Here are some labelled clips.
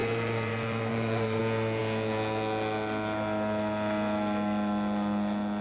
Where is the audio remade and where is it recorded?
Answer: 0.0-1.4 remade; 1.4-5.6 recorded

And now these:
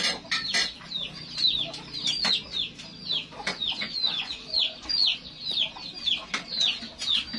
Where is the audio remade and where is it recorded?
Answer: 0.0-3.3 recorded; 3.3-5.6 remade; 5.6-7.4 recorded

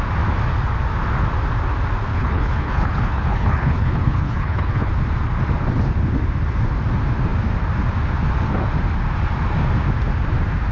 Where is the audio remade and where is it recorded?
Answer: 0.0-2.1 recorded; 2.1-4.9 remade; 4.9-10.7 recorded

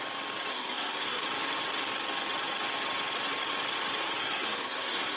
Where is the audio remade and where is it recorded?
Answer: 0.0-0.5 recorded; 0.5-1.2 remade; 1.2-4.2 recorded; 4.2-5.2 remade

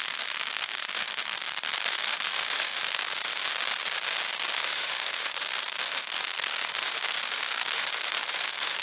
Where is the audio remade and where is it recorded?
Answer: 0.0-1.4 remade; 1.4-1.9 recorded; 1.9-3.4 remade; 3.4-4.5 recorded; 4.5-8.8 remade

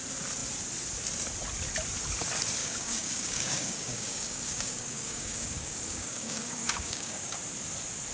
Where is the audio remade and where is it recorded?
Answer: 0.0-2.6 recorded; 2.6-7.4 remade; 7.4-8.1 recorded